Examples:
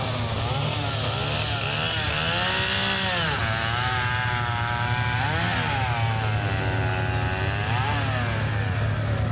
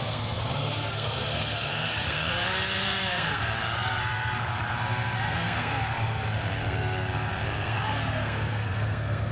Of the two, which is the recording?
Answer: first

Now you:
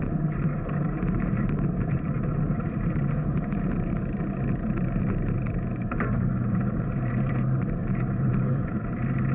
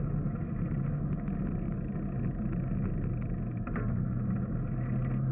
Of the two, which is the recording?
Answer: second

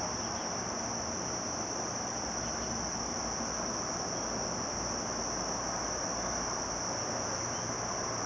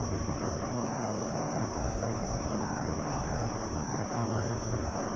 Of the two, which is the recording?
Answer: first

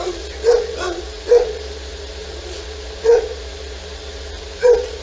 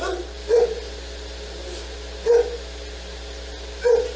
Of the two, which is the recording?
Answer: second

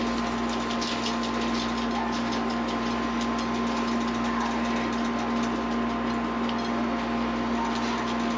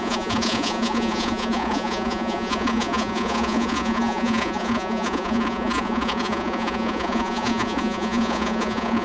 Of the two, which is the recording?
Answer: first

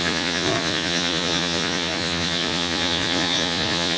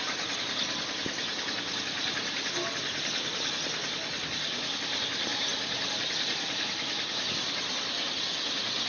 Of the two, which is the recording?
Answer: second